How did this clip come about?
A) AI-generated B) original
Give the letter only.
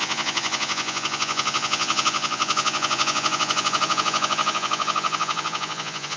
A